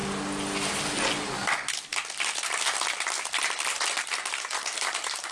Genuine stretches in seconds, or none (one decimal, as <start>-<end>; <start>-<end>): 0.0-5.3